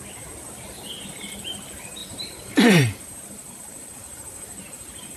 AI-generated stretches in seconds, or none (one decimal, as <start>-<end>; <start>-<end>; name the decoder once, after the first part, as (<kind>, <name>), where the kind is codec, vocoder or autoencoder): 2.0-5.2 (vocoder, BigVGAN v2)